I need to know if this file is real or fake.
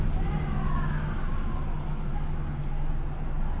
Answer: real